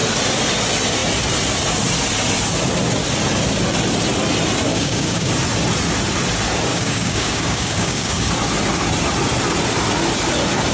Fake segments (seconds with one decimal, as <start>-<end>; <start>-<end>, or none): 4.7-5.3; 6.7-8.3